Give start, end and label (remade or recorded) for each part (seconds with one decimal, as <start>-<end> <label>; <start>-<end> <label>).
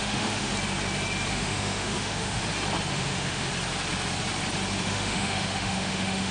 0.0-0.5 remade; 0.5-1.3 recorded; 1.3-2.4 remade; 2.4-2.9 recorded; 2.9-3.5 remade; 3.5-4.8 recorded; 4.8-6.3 remade